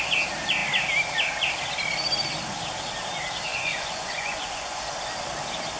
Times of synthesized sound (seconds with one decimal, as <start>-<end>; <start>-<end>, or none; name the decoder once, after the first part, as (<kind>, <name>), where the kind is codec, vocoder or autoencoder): 3.5-4.8 (vocoder, Vocos)